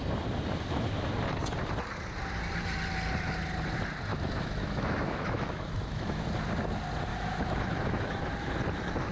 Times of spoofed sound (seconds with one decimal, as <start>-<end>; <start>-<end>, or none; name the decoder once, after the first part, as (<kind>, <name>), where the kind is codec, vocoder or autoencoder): 4.1-6.2 (autoencoder, DAC-VAE); 7.1-8.2